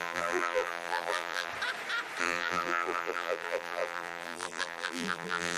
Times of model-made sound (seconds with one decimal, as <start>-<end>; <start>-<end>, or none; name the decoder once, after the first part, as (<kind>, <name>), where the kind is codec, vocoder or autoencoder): 0.0-1.5 (vocoder, BigVGAN v2); 2.2-5.6